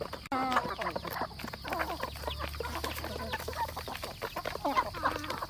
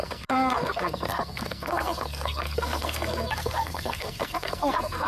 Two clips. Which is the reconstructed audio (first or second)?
second